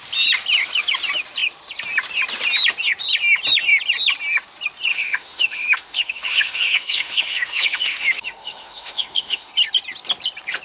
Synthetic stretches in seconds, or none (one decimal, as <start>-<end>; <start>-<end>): 4.9-9.5